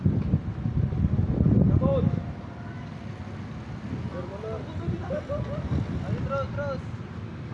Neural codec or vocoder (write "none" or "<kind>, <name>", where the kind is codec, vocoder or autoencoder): none